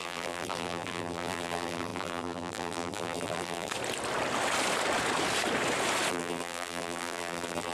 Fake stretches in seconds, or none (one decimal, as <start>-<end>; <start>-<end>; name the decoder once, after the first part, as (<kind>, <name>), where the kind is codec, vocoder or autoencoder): 0.0-3.7 (vocoder, BigVGAN v2); 6.1-7.7